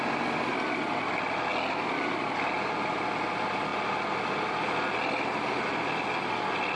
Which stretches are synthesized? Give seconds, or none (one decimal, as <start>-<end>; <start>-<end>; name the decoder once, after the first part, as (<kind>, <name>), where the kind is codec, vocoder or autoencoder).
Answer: none